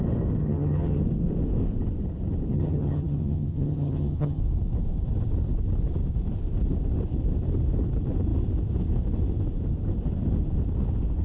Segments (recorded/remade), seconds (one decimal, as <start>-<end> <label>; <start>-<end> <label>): 0.0-0.4 recorded; 0.4-1.0 remade; 1.0-2.5 recorded; 2.5-4.4 remade; 4.4-11.2 recorded

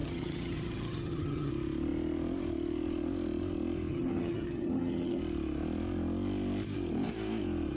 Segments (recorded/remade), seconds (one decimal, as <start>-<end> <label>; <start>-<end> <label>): 0.0-1.5 remade; 1.5-3.9 recorded; 3.9-5.2 remade; 5.2-7.8 recorded

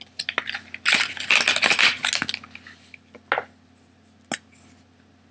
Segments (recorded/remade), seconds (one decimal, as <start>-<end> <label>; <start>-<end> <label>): 0.0-5.3 recorded

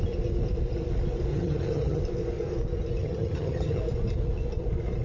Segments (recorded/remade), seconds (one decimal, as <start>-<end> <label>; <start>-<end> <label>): 0.0-1.3 recorded; 1.3-2.0 remade; 2.0-3.0 recorded; 3.0-3.8 remade; 3.8-5.0 recorded

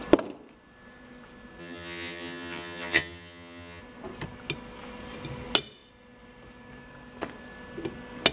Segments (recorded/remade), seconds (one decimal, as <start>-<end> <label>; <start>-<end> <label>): 0.0-1.6 recorded; 1.6-3.8 remade; 3.8-8.3 recorded

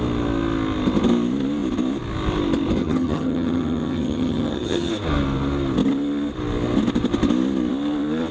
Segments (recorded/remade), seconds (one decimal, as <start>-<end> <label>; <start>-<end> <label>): 0.0-2.8 recorded; 2.8-4.9 remade; 4.9-8.3 recorded